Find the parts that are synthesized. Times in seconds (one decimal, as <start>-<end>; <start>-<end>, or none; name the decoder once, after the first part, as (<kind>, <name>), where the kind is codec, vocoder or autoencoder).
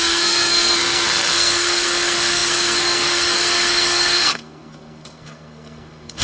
0.0-6.2 (codec, SNAC)